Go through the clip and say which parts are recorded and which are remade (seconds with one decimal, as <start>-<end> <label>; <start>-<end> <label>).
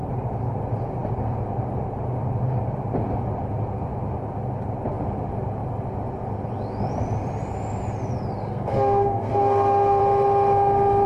0.0-8.4 recorded; 8.4-10.0 remade; 10.0-11.1 recorded